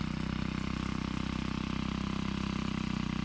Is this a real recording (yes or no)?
yes